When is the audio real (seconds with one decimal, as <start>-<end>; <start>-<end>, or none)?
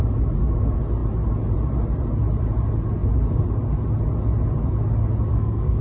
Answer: 0.0-5.3